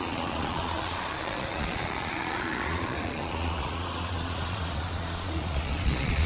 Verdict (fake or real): fake